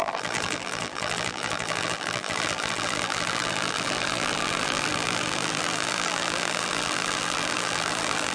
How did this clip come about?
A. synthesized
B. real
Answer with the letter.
A